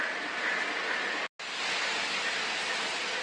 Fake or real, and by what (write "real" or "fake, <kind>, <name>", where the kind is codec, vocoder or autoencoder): real